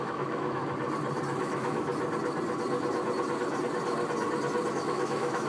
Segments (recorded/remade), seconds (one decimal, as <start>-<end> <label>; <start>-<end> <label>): 0.0-0.6 remade; 0.6-1.4 recorded; 1.4-1.9 remade; 1.9-4.7 recorded; 4.7-5.5 remade